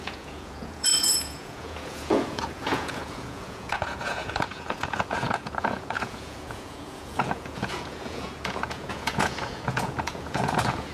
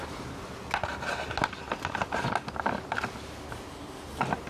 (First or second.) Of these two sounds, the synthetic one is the first